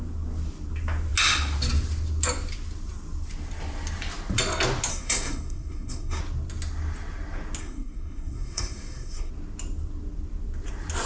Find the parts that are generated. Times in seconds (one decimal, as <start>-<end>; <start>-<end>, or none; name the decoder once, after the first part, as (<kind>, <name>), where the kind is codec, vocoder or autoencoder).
4.9-6.2 (codec, SNAC); 7.6-9.3